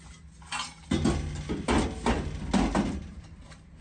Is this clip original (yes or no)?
yes